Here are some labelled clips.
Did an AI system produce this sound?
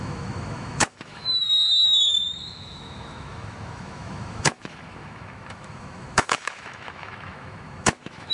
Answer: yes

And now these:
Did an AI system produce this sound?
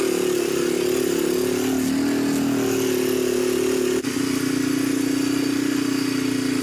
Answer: no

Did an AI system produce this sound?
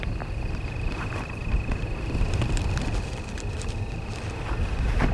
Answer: no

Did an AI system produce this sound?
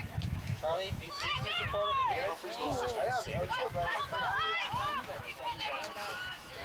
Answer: yes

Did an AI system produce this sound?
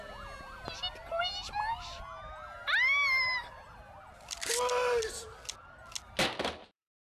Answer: no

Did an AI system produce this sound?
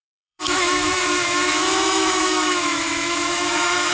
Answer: yes